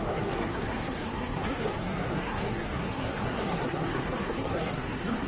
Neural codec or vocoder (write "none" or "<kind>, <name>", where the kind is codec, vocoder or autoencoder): codec, SNAC